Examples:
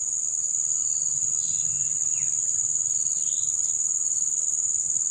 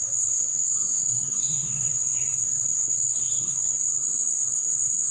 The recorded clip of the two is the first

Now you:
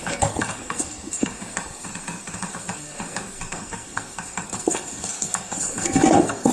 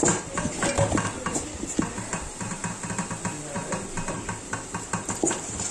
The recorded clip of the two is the second